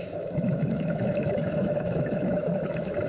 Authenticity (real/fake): fake